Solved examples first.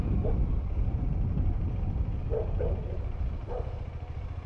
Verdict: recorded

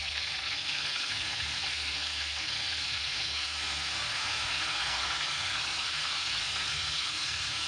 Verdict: remade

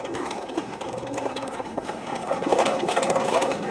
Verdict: remade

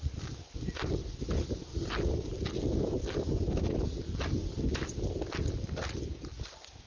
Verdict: recorded